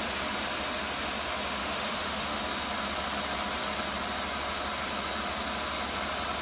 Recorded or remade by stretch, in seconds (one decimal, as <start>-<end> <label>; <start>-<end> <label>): 0.0-1.6 recorded; 1.6-2.4 remade; 2.4-6.4 recorded